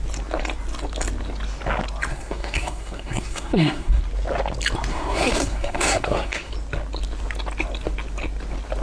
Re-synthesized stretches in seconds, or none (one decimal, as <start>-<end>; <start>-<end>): 2.1-4.0; 4.9-6.5